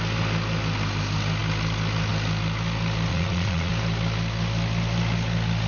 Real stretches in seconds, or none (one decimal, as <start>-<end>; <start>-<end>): 0.0-3.1; 3.7-5.7